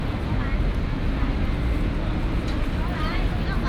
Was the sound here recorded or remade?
recorded